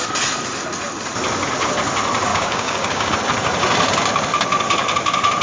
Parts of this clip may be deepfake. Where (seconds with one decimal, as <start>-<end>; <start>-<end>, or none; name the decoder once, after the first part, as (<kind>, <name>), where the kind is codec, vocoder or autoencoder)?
2.3-3.1 (codec, DAC)